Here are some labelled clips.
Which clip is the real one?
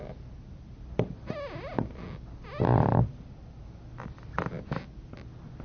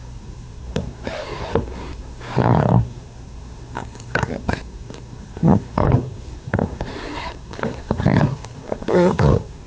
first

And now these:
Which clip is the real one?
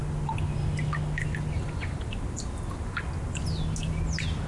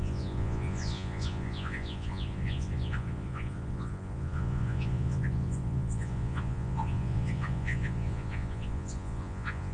first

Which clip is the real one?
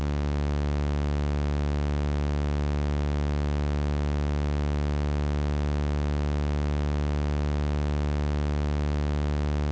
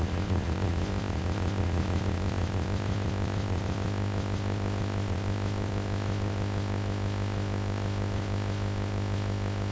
first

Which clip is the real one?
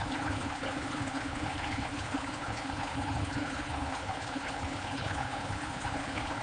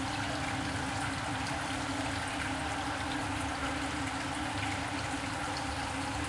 second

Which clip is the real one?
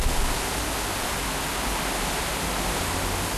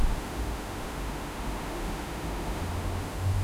first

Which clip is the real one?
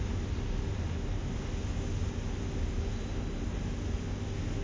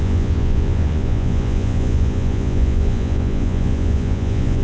first